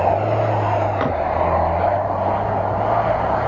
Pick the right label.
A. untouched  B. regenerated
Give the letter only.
A